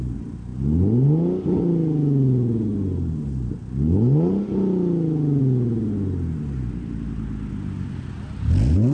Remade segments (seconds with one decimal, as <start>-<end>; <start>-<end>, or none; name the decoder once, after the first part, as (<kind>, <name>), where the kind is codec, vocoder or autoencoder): none